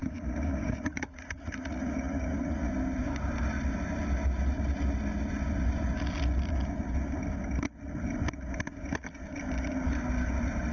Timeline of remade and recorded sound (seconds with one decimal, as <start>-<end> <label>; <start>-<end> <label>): 0.0-2.7 remade; 2.7-10.7 recorded

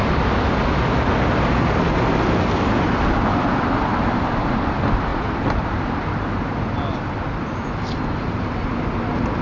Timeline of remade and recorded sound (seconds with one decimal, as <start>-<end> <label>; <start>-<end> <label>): 0.0-5.1 recorded; 5.1-6.7 remade; 6.7-9.4 recorded

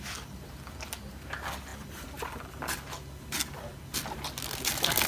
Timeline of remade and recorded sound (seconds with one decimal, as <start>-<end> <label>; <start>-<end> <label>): 0.0-5.1 recorded

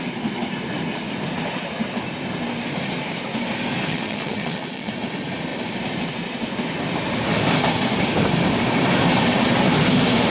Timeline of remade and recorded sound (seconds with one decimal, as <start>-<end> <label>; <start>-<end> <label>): 0.0-3.9 recorded; 3.9-4.9 remade; 4.9-10.3 recorded

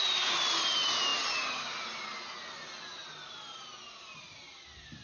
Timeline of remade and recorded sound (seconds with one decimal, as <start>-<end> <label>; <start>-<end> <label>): 0.0-5.0 recorded

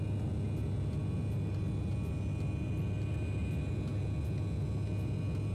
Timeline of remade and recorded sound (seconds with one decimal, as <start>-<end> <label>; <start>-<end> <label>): 0.0-5.5 recorded

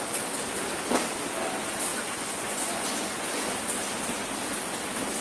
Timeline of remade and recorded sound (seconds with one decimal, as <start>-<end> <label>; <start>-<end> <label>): 0.0-1.9 recorded; 1.9-3.5 remade; 3.5-5.2 recorded